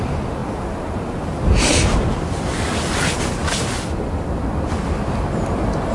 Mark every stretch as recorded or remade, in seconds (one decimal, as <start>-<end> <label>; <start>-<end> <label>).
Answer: 0.0-5.9 recorded